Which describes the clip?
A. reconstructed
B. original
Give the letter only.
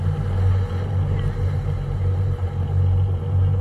B